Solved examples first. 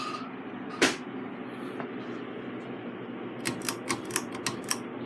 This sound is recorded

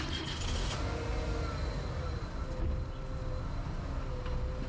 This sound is recorded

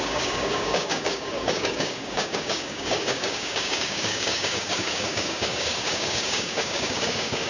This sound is remade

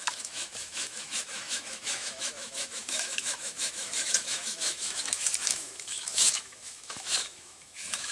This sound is remade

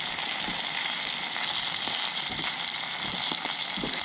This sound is recorded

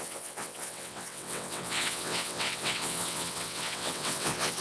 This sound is remade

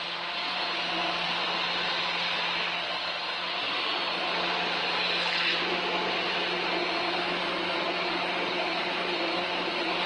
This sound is recorded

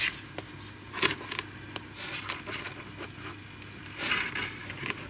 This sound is recorded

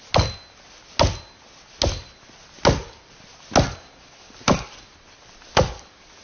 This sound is recorded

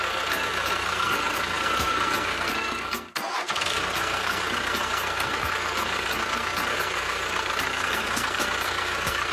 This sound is remade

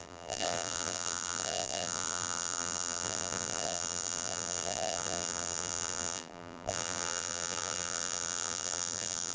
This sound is remade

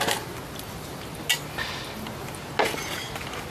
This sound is recorded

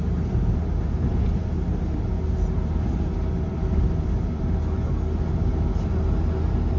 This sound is recorded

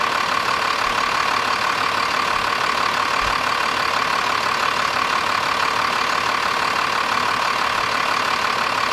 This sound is recorded